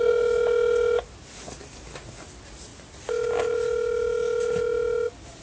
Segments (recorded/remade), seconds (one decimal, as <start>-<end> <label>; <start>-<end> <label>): 0.0-5.4 recorded